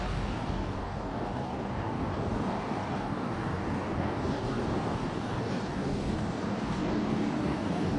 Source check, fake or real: fake